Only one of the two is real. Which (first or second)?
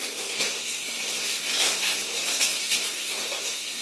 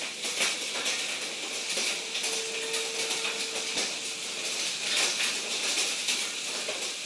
second